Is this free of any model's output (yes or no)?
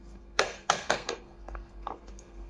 no